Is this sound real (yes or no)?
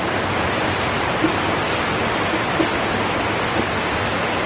yes